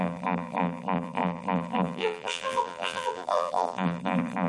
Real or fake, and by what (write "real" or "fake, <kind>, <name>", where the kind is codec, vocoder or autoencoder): fake, vocoder, BigVGAN v2